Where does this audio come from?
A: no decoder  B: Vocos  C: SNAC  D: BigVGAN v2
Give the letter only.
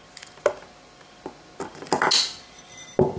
A